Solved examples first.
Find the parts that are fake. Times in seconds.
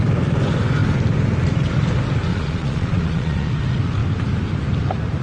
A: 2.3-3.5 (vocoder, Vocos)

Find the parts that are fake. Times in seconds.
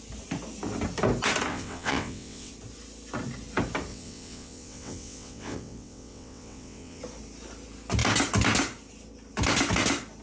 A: 1.5-2.5 (vocoder, WaveNeXt); 3.9-7.0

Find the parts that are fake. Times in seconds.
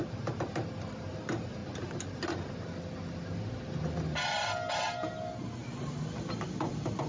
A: none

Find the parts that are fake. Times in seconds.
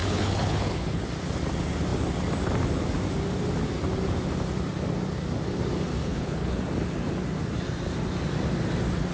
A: 0.0-1.0 (codec, HILCodec); 6.0-6.6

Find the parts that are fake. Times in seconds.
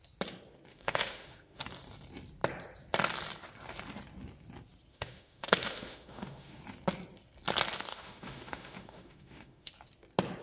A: 0.7-1.6 (autoencoder, DAC-VAE); 4.9-6.6; 7.9-9.7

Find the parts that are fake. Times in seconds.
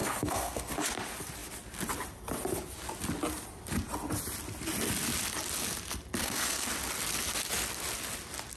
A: 0.0-0.7 (codec, SNAC); 6.2-6.7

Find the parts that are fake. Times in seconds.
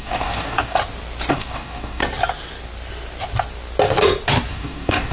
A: 0.0-0.8 (codec, DAC); 1.3-2.0; 4.5-5.1